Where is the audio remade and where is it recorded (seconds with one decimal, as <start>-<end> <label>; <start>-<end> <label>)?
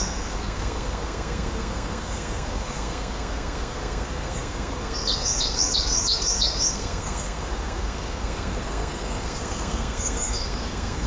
0.0-11.1 remade